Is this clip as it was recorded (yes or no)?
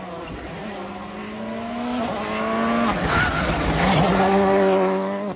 yes